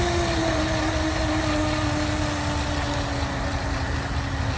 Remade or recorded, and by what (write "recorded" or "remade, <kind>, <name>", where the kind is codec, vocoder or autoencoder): recorded